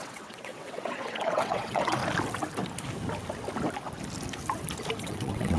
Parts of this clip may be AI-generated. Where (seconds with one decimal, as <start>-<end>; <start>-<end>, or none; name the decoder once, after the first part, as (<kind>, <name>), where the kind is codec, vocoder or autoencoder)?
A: 0.0-2.0 (vocoder, WaveNeXt); 5.0-5.6